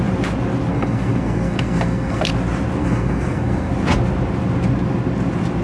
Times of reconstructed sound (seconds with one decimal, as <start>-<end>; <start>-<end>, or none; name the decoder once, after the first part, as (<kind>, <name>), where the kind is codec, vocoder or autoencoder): 0.7-2.3 (codec, SNAC); 2.8-3.7